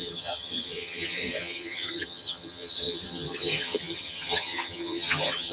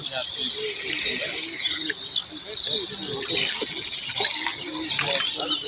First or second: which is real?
second